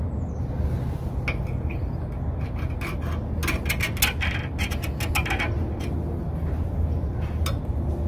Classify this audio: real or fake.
real